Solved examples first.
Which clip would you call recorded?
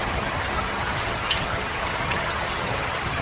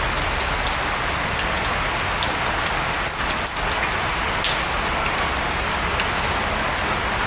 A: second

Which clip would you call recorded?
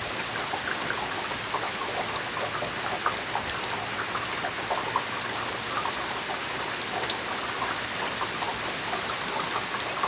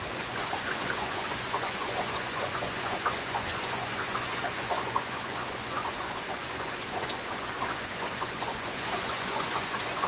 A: first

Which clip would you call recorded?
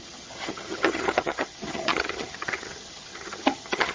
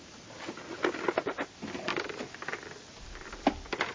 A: second